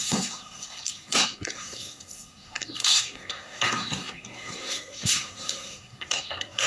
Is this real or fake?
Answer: fake